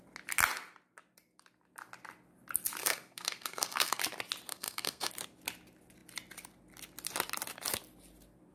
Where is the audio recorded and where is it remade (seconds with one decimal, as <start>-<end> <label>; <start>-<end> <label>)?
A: 0.0-2.8 recorded; 2.8-4.0 remade; 4.0-4.5 recorded; 4.5-5.1 remade; 5.1-8.5 recorded